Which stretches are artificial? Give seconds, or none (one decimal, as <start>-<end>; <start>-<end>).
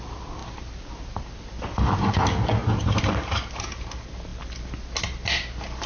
2.6-3.4